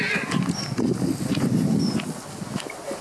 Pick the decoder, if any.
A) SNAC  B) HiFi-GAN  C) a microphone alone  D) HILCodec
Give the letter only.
C